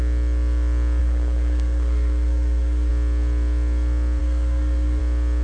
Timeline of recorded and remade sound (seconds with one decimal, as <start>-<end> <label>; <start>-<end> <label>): 0.0-1.0 recorded; 1.0-2.9 remade; 2.9-4.2 recorded; 4.2-5.0 remade; 5.0-5.4 recorded